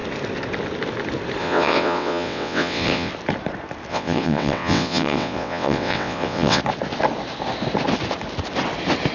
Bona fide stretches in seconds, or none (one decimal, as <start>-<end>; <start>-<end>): 0.0-1.4; 3.1-3.9; 6.6-9.1